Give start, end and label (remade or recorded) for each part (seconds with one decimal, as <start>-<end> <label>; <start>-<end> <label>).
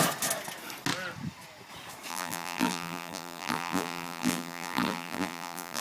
0.0-2.1 recorded; 2.1-5.8 remade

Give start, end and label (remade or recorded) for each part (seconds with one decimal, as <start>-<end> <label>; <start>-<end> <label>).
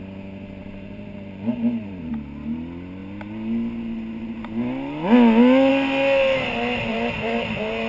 0.0-0.6 recorded; 0.6-2.1 remade; 2.1-6.9 recorded; 6.9-7.9 remade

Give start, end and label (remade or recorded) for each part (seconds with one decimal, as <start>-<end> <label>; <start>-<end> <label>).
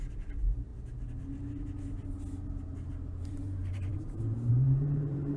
0.0-0.7 remade; 0.7-3.3 recorded; 3.3-5.4 remade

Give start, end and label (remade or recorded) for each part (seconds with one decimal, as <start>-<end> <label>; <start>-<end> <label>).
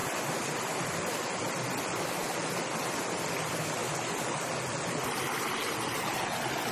0.0-1.5 recorded; 1.5-2.2 remade; 2.2-3.0 recorded; 3.0-3.8 remade; 3.8-5.5 recorded; 5.5-6.7 remade